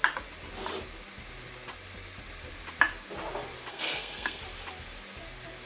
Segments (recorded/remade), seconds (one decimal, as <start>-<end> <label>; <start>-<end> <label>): 0.0-3.7 recorded; 3.7-4.4 remade; 4.4-5.7 recorded